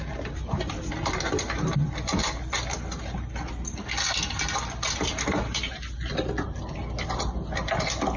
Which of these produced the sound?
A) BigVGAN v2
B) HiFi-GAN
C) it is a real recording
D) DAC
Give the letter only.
C